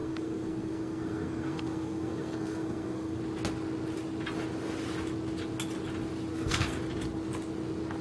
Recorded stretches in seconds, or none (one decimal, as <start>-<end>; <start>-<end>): 3.2-6.3; 6.8-8.0